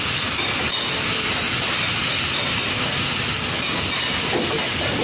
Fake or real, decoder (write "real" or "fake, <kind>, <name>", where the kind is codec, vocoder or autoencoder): real